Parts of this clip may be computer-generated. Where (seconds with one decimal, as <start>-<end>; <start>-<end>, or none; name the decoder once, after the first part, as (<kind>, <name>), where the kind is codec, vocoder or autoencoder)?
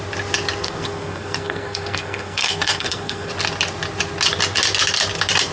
0.6-3.3 (codec, SNAC)